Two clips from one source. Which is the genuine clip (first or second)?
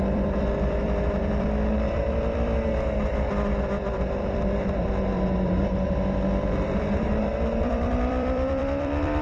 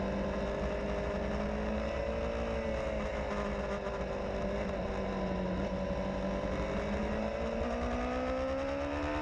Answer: second